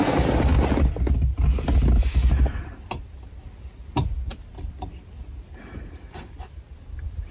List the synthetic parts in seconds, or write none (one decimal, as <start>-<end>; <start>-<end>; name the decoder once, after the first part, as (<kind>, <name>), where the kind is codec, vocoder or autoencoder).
none